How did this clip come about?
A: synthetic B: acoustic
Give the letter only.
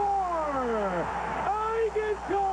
B